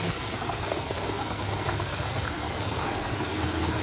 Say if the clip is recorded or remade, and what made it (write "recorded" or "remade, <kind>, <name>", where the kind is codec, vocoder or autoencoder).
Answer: remade, codec, SNAC